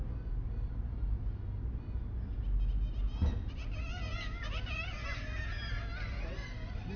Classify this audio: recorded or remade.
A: recorded